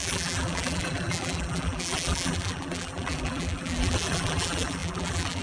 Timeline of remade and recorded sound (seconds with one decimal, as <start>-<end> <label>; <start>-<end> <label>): 0.0-5.4 remade